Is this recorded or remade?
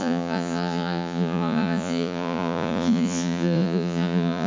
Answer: remade